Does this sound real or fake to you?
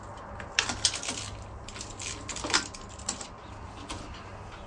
real